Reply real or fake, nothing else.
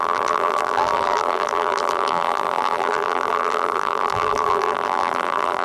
fake